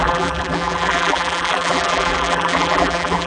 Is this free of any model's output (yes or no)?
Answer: no